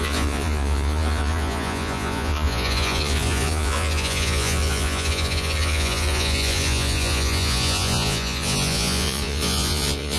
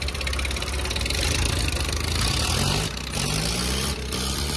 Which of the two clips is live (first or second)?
second